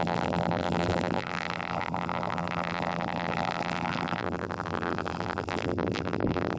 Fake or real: fake